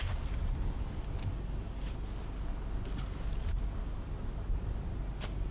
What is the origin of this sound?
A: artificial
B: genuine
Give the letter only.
B